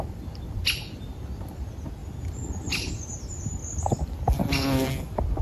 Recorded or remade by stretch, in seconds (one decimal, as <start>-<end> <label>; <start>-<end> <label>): 0.0-5.4 recorded